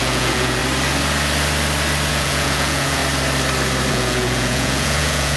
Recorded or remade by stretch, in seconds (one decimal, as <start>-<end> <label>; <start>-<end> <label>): 0.0-0.6 remade; 0.6-2.1 recorded; 2.1-3.0 remade; 3.0-3.9 recorded; 3.9-5.4 remade